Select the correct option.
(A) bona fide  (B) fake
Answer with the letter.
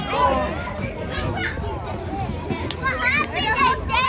A